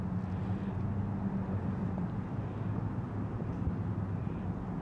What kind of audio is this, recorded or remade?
recorded